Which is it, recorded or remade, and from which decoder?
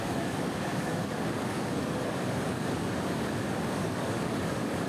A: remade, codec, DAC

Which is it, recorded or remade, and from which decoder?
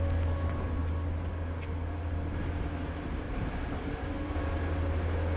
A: recorded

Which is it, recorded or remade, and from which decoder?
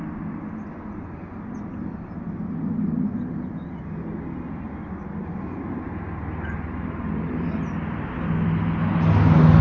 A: recorded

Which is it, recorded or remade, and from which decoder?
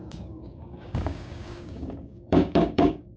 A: remade, codec, DAC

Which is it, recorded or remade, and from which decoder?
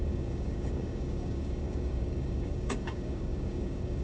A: remade, codec, DAC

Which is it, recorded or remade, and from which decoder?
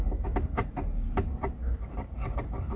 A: recorded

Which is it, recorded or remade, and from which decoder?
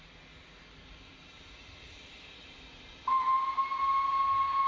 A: recorded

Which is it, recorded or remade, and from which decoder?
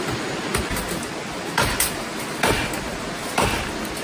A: recorded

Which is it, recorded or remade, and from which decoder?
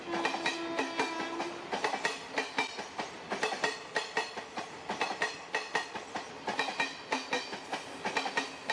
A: recorded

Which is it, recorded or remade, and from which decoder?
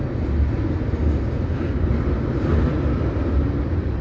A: recorded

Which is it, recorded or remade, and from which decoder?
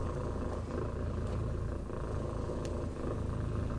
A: recorded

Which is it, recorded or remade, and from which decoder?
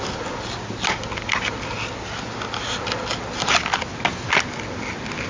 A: recorded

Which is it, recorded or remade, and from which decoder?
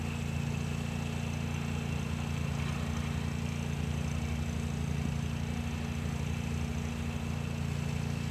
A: recorded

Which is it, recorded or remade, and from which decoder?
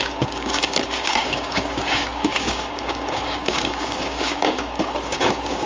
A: remade, codec, DAC